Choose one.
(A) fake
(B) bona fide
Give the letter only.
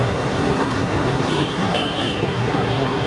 A